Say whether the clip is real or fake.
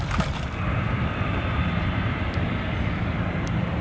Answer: fake